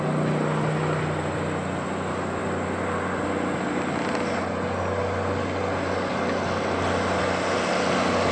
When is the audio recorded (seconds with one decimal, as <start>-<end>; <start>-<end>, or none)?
0.0-8.3